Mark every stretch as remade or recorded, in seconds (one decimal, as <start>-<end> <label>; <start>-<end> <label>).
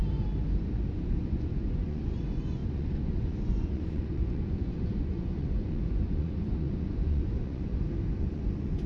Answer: 0.0-0.9 recorded; 0.9-7.7 remade; 7.7-8.2 recorded; 8.2-8.9 remade